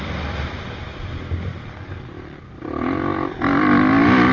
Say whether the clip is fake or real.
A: real